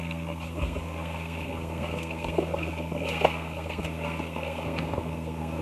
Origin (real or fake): fake